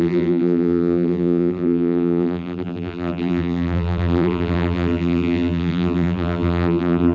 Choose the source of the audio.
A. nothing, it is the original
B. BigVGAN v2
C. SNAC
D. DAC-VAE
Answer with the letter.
B